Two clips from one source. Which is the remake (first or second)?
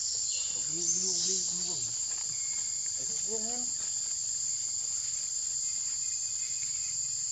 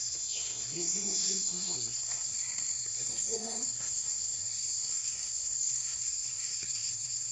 second